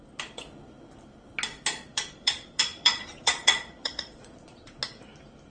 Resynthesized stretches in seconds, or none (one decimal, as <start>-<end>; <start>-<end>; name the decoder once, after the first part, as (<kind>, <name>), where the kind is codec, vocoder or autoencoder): 1.5-4.8 (vocoder, Vocos)